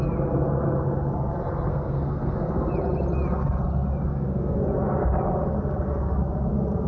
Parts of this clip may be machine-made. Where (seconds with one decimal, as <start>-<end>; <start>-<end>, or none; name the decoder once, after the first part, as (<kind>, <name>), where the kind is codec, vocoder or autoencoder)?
1.7-2.7 (codec, SNAC); 4.1-4.6